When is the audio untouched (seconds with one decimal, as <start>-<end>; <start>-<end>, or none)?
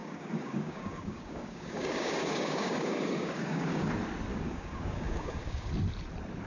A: 3.9-4.3; 5.7-6.5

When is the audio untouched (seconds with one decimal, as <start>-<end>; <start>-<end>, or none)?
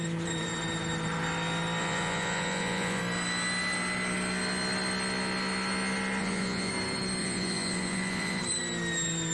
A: 0.0-1.8; 3.0-6.2; 6.7-7.2; 8.4-9.3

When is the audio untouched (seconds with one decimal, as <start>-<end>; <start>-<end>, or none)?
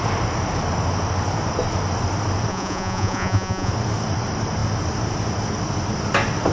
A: 0.0-2.5; 3.7-6.5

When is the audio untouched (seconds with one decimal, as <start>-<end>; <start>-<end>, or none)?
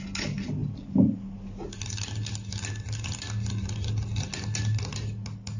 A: 0.0-5.6